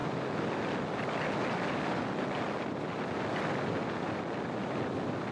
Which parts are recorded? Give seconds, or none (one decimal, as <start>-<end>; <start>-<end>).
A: 0.0-5.3